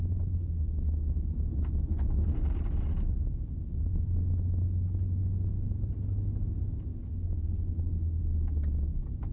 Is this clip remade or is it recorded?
recorded